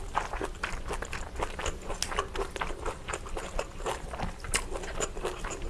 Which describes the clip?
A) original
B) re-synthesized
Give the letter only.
A